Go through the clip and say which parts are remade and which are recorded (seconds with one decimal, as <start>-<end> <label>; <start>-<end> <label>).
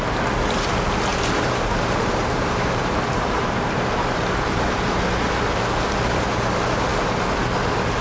0.0-1.1 recorded; 1.1-5.0 remade; 5.0-8.0 recorded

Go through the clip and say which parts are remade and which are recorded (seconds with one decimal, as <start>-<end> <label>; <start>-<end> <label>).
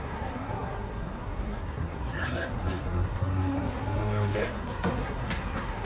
0.0-5.8 remade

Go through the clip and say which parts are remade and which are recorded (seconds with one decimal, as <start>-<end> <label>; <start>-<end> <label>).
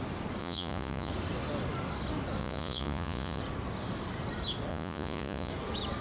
0.0-0.4 recorded; 0.4-1.1 remade; 1.1-2.4 recorded; 2.4-3.4 remade; 3.4-4.7 recorded; 4.7-5.5 remade; 5.5-6.0 recorded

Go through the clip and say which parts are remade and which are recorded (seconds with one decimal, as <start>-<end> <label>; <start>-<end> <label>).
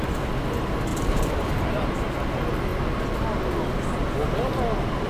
0.0-0.9 recorded; 0.9-1.9 remade; 1.9-5.1 recorded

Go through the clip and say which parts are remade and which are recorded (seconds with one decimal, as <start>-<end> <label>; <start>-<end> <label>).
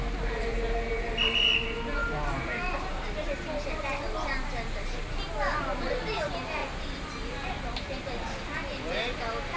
0.0-9.6 recorded